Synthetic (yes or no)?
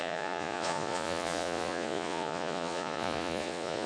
yes